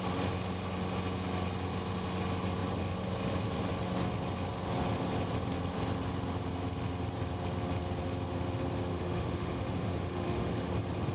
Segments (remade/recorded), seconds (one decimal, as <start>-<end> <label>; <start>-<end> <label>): 0.0-8.9 recorded; 8.9-10.7 remade; 10.7-11.1 recorded